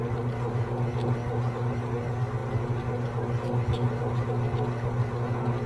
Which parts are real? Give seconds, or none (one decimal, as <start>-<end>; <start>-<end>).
0.0-5.7